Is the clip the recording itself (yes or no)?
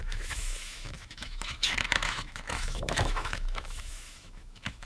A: no